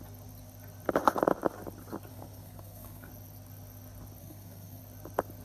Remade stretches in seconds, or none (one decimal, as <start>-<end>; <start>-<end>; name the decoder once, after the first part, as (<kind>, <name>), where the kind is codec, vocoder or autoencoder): 2.1-3.1 (codec, SNAC); 4.2-4.8